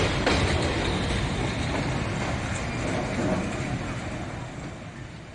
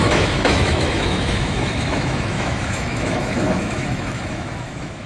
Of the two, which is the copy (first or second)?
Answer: second